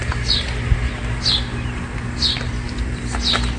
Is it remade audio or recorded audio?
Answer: recorded